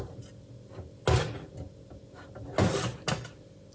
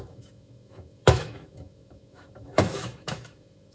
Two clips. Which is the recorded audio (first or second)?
first